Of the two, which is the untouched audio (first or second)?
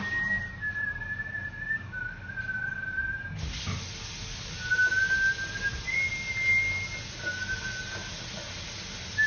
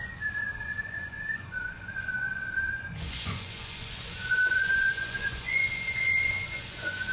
first